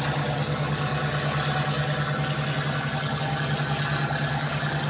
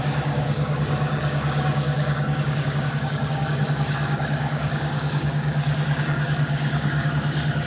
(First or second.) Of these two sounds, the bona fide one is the first